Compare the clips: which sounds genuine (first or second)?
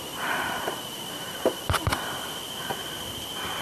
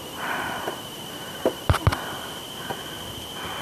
second